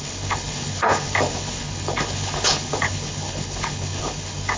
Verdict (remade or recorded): remade